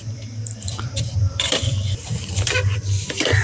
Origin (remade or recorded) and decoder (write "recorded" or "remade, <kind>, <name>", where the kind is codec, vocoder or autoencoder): remade, vocoder, BigVGAN v2